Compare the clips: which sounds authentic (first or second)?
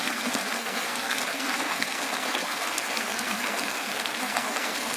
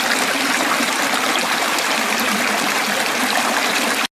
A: second